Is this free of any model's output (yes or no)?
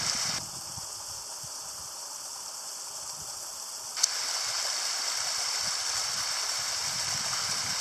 yes